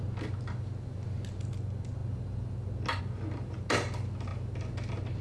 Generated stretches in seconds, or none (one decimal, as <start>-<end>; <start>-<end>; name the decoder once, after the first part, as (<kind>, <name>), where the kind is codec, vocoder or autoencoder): none

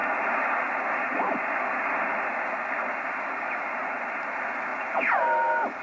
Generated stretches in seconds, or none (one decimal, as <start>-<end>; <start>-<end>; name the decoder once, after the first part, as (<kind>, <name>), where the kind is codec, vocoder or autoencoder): none